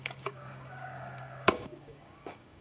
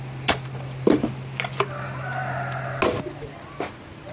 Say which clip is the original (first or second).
second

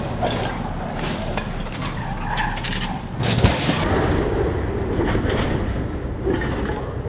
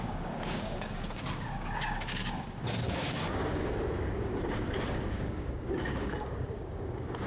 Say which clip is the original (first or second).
first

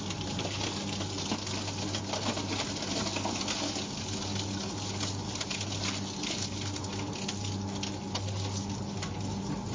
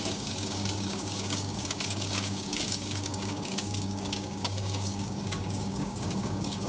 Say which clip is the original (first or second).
first